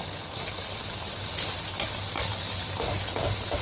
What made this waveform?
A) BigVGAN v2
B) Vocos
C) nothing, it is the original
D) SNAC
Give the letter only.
C